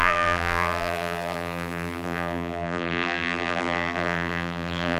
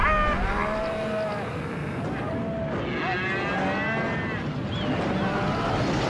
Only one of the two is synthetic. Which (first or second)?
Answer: first